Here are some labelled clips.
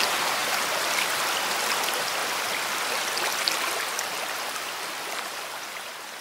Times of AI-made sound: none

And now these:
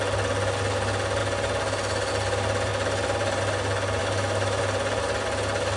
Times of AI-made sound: 4.0-4.6 (autoencoder, DAC-VAE)

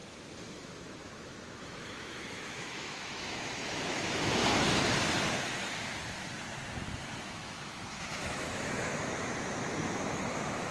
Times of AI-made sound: 0.0-4.4 (autoencoder, DAC-VAE); 7.2-10.7

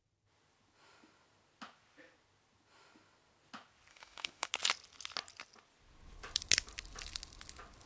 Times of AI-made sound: 3.9-4.5 (autoencoder, DAC-VAE)